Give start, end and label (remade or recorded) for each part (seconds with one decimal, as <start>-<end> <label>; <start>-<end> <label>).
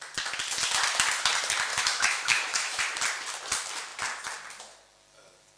0.0-1.7 recorded; 1.7-2.8 remade; 2.8-5.6 recorded